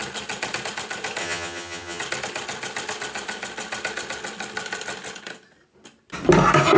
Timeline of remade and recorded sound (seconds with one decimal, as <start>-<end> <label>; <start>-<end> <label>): 0.0-1.2 recorded; 1.2-2.0 remade; 2.0-6.8 recorded